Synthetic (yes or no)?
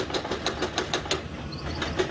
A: no